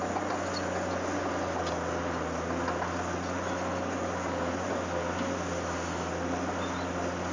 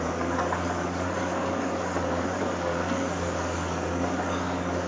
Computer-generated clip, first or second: second